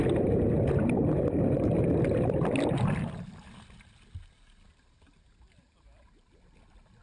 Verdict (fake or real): real